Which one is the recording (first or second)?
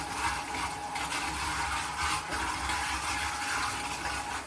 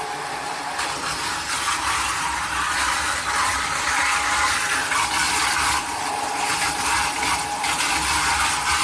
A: first